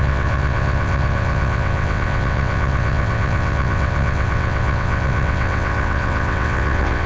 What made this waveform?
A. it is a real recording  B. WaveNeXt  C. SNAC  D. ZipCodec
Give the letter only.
B